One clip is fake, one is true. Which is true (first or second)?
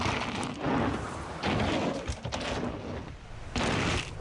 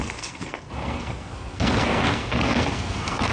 first